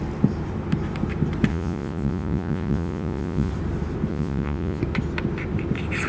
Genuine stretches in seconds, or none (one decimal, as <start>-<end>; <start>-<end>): 0.0-1.5; 3.5-4.1; 4.8-6.1